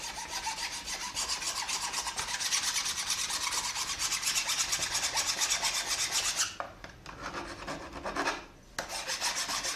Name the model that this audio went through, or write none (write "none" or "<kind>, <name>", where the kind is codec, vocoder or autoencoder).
none